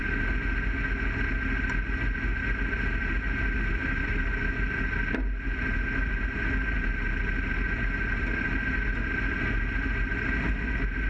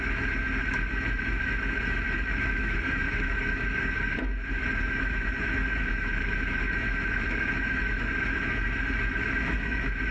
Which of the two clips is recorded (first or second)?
first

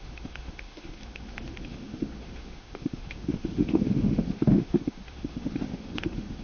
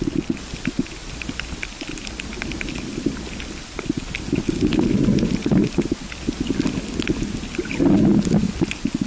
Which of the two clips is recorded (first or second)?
second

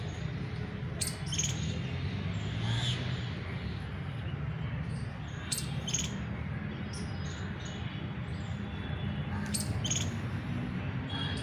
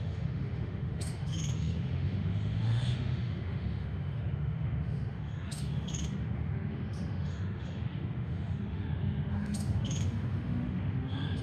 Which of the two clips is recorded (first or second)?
first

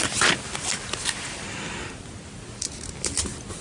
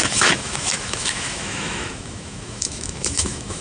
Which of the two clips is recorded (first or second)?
first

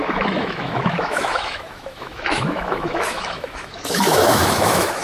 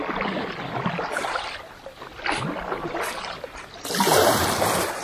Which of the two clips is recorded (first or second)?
second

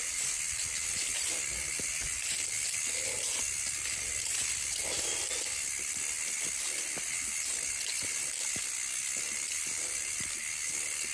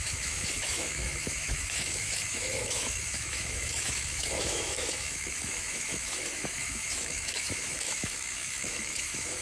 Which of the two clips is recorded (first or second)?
first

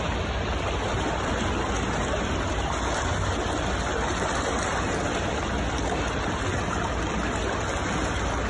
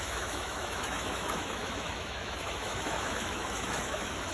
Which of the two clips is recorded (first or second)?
first